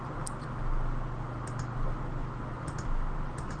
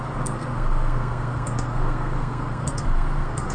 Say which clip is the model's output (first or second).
second